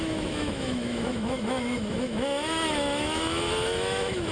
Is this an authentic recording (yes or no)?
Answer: no